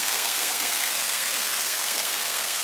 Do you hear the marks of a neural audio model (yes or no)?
yes